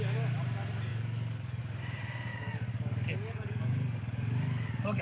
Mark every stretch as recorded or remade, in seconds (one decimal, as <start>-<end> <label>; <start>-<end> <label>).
0.0-0.9 recorded; 0.9-1.6 remade; 1.6-2.3 recorded; 2.3-5.0 remade